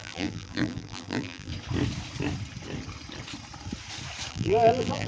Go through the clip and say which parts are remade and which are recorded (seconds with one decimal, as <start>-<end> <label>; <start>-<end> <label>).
0.0-1.5 remade; 1.5-4.3 recorded; 4.3-5.1 remade